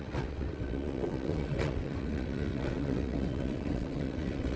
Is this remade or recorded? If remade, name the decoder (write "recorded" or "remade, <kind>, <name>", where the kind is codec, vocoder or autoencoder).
remade, vocoder, WaveNeXt